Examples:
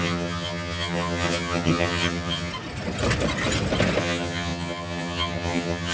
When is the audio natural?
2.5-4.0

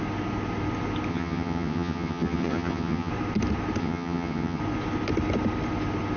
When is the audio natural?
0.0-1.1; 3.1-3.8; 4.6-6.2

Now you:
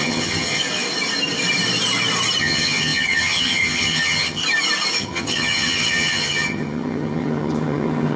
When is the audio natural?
0.6-2.4; 4.4-5.0

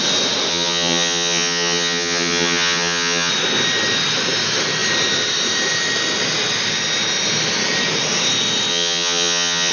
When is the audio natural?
0.0-0.5; 3.3-8.7

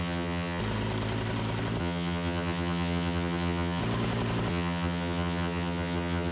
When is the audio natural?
0.6-1.8; 3.8-4.5